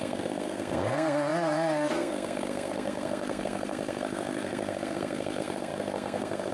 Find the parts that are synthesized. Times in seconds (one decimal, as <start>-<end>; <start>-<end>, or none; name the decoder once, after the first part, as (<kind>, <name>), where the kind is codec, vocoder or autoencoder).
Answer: 0.0-6.5 (codec, SNAC)